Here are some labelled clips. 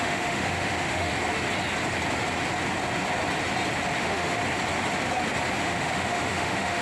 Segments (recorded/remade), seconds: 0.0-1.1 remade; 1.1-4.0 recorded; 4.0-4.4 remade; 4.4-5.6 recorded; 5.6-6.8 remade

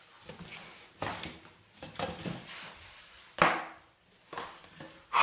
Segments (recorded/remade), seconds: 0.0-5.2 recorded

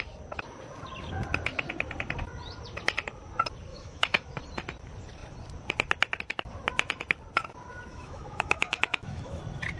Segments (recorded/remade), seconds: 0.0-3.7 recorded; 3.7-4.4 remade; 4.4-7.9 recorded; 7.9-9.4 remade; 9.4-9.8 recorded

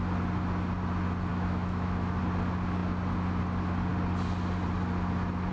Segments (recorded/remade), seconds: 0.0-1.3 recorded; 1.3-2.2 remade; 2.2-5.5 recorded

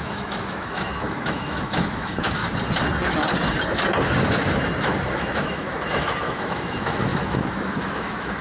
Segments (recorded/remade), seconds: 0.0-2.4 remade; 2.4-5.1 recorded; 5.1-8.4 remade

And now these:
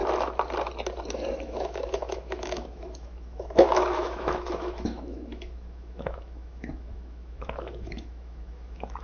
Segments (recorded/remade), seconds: 0.0-1.3 recorded; 1.3-9.0 remade

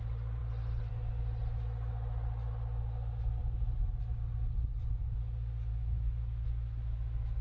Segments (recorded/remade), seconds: 0.0-5.7 recorded; 5.7-7.4 remade